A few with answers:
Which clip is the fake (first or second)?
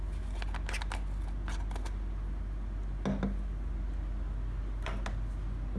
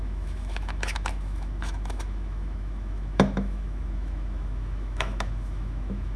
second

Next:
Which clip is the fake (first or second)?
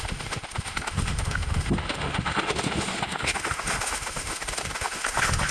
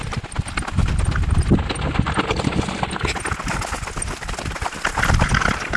first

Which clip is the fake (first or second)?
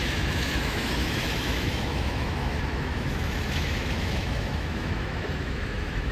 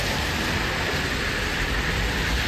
first